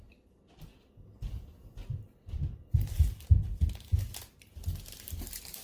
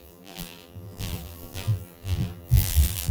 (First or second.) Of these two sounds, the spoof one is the second